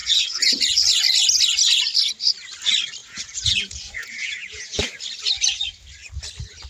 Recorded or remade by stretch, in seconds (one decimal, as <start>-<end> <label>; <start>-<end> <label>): 0.0-0.6 remade; 0.6-3.0 recorded; 3.0-4.8 remade; 4.8-6.7 recorded